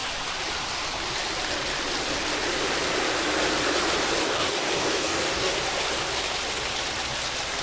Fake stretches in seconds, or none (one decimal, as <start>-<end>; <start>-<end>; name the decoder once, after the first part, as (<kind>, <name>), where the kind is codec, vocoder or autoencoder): 4.2-5.5 (codec, DAC)